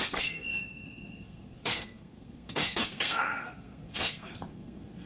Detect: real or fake fake